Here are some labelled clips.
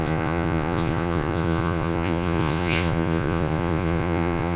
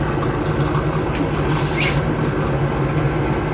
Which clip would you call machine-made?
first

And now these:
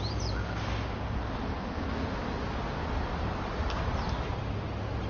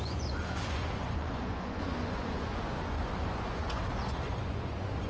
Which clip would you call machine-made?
second